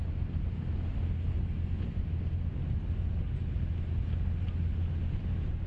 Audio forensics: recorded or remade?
recorded